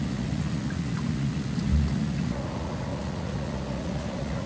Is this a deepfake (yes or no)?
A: yes